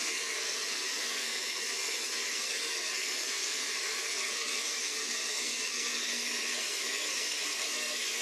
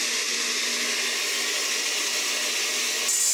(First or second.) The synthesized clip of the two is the first